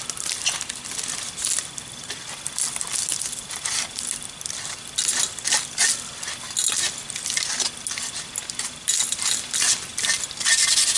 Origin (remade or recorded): recorded